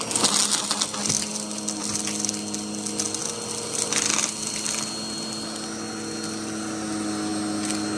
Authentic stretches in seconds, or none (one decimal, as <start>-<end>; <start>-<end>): 0.0-8.0